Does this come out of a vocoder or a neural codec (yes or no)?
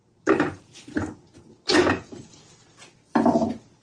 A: no